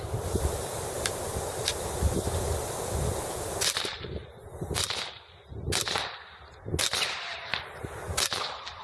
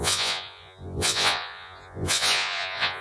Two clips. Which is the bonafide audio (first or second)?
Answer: first